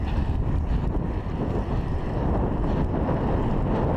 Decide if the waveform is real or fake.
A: fake